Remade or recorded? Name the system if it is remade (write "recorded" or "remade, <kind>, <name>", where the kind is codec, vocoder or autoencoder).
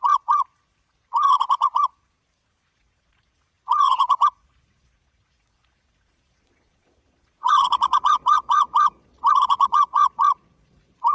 remade, vocoder, Vocos